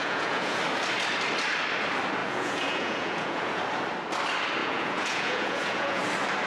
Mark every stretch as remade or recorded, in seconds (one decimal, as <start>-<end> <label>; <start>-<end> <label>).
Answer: 0.0-0.6 remade; 0.6-2.2 recorded; 2.2-3.6 remade; 3.6-4.6 recorded; 4.6-6.0 remade; 6.0-6.5 recorded

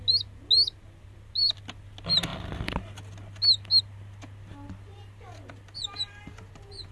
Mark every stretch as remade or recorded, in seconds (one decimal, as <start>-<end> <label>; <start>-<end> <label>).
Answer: 0.0-4.9 recorded; 4.9-6.9 remade

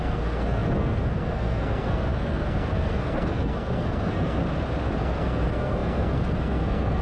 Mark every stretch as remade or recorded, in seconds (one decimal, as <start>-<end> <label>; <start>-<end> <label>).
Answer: 0.0-4.4 remade; 4.4-5.0 recorded; 5.0-7.0 remade

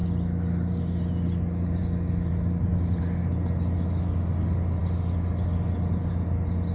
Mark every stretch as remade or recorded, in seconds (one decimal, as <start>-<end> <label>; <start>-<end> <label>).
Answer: 0.0-6.7 recorded

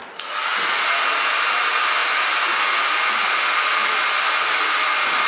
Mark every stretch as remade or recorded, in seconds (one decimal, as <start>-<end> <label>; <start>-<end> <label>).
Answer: 0.0-5.3 recorded